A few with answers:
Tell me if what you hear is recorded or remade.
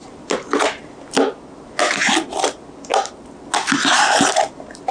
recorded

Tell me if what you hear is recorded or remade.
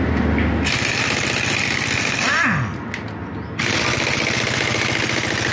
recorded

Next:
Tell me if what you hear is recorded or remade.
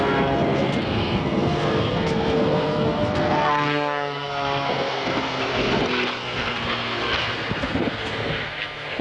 remade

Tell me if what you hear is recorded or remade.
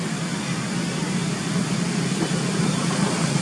recorded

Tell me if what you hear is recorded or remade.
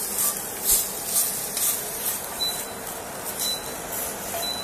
recorded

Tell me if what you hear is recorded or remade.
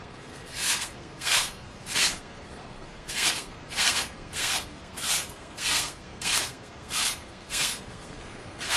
remade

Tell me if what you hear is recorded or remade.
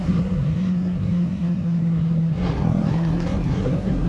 remade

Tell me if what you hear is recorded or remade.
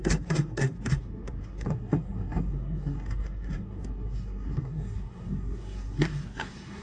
remade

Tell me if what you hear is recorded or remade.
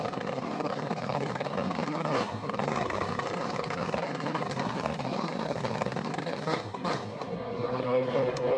remade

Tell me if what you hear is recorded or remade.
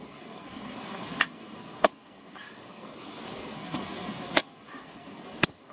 remade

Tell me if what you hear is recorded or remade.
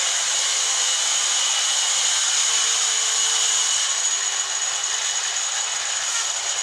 recorded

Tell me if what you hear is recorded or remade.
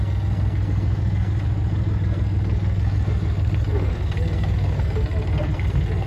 remade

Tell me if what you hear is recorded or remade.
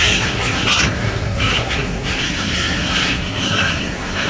remade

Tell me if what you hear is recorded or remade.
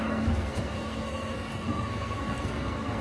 remade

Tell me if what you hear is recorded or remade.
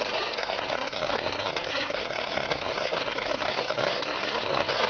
remade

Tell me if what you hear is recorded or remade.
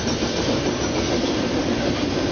recorded